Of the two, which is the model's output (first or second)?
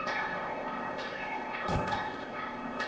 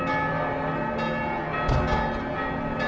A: first